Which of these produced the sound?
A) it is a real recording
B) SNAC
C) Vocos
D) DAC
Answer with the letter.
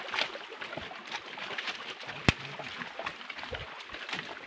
A